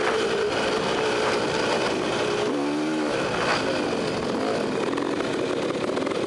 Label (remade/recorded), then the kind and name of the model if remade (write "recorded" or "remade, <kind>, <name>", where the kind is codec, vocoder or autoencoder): recorded